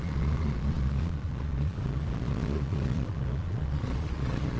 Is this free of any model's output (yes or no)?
no